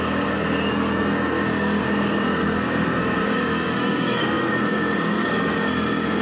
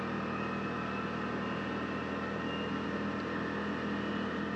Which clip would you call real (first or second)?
second